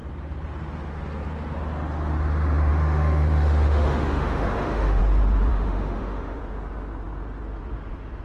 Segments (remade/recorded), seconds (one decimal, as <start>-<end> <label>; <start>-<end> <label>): 0.0-2.7 recorded; 2.7-5.0 remade; 5.0-5.5 recorded; 5.5-6.4 remade; 6.4-8.2 recorded

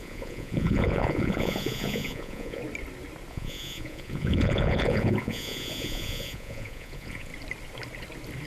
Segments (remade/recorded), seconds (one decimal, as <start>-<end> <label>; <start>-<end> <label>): 0.0-2.6 remade; 2.6-3.3 recorded; 3.3-7.3 remade; 7.3-8.5 recorded

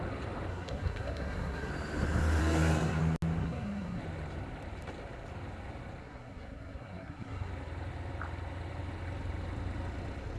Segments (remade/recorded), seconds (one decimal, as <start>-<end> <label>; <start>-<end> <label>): 0.0-0.5 recorded; 0.5-1.7 remade; 1.7-2.4 recorded; 2.4-3.0 remade; 3.0-3.4 recorded; 3.4-4.0 remade; 4.0-6.0 recorded; 6.0-7.5 remade; 7.5-10.4 recorded

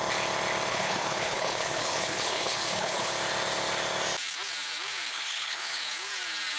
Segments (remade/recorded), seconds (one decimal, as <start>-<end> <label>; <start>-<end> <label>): 0.0-0.7 recorded; 0.7-3.1 remade; 3.1-5.1 recorded; 5.1-5.8 remade; 5.8-6.6 recorded

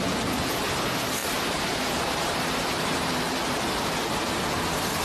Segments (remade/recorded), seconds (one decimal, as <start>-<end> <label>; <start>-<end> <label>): 0.0-1.2 recorded; 1.2-3.9 remade; 3.9-5.0 recorded

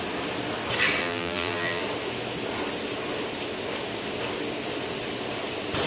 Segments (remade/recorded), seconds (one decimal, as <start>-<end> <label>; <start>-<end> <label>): 0.0-1.0 recorded; 1.0-1.8 remade; 1.8-5.9 recorded